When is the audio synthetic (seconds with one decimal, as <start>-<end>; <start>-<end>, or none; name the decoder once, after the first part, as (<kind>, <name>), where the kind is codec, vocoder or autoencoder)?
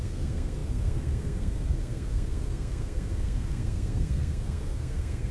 0.0-5.3 (codec, SNAC)